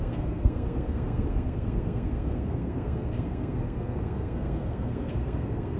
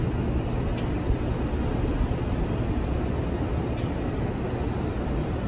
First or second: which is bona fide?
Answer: second